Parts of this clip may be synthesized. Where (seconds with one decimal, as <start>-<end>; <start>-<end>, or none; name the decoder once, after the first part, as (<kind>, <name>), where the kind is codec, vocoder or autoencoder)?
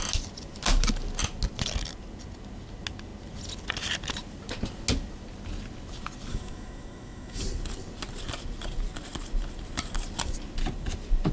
6.3-7.4 (autoencoder, DAC-VAE)